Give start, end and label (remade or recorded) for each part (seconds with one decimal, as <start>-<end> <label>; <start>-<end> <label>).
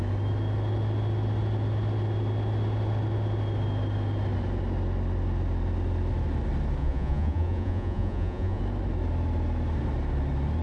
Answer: 0.0-6.8 recorded; 6.8-8.6 remade; 8.6-10.6 recorded